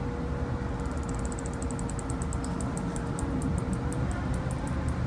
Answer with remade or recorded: recorded